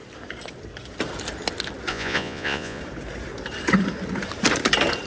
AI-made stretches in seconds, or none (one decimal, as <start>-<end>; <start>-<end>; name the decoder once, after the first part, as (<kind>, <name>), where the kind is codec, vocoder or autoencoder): 1.9-2.8 (vocoder, Vocos)